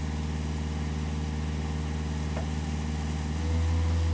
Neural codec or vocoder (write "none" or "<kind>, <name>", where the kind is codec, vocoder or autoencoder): none